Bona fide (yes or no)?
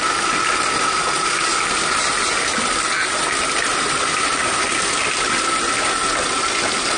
yes